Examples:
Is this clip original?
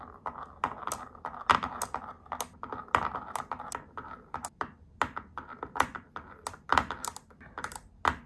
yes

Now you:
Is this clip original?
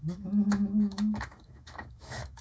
no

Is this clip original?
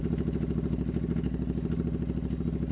yes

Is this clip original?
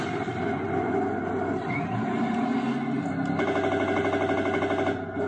yes